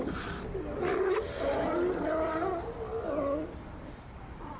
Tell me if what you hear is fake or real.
real